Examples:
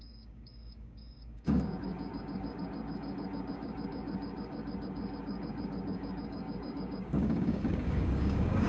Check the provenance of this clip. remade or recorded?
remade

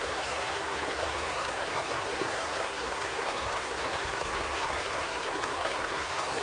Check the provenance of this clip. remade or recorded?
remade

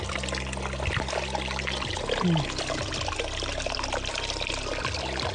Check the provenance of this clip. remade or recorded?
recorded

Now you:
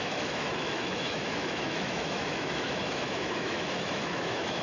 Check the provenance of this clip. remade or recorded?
remade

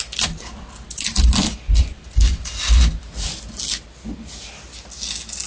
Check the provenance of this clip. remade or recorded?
recorded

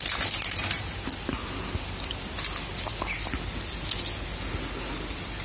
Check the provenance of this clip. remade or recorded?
recorded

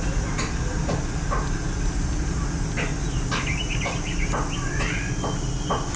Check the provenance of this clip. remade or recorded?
recorded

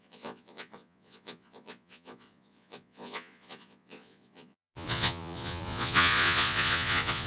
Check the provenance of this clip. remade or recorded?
remade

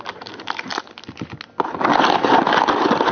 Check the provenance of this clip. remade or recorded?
recorded